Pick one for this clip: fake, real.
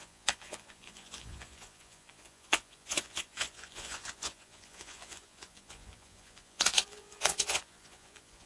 fake